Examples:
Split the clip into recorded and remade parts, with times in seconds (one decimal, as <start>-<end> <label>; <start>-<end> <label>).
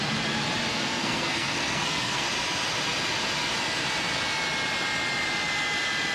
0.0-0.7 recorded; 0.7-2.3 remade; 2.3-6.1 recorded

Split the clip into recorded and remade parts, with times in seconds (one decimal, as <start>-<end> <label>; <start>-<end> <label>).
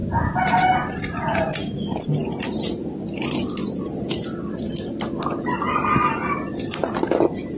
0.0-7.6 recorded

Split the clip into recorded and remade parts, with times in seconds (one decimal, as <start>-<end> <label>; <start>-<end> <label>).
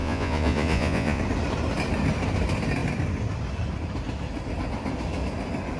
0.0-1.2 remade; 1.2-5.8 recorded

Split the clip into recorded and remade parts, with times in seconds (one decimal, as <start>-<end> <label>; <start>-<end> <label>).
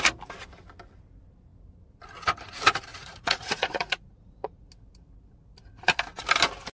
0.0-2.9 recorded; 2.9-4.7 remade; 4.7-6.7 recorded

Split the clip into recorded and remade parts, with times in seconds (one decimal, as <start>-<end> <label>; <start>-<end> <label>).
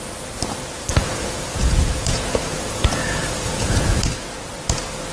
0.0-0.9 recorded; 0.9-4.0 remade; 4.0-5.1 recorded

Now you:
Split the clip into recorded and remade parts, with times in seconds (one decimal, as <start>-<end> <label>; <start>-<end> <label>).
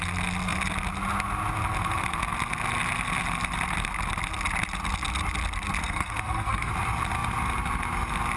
0.0-5.8 recorded; 5.8-6.7 remade; 6.7-8.4 recorded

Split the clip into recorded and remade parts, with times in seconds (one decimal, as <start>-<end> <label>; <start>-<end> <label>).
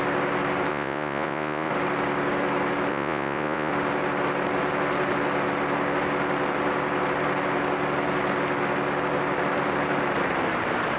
0.0-0.7 recorded; 0.7-1.7 remade; 1.7-2.9 recorded; 2.9-3.7 remade; 3.7-11.0 recorded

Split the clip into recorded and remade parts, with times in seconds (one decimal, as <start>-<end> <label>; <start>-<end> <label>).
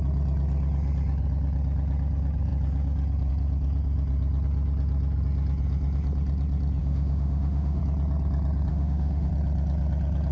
0.0-6.8 recorded; 6.8-7.8 remade; 7.8-8.7 recorded; 8.7-9.3 remade; 9.3-10.3 recorded